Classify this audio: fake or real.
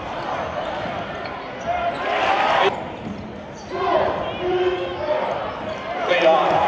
fake